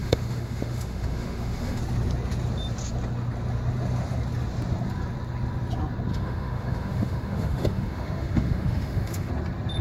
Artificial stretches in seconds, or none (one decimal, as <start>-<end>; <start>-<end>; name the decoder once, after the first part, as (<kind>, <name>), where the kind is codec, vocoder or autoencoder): 0.0-1.8 (autoencoder, DAC-VAE); 6.1-9.3